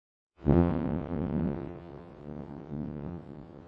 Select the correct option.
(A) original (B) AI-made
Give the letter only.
B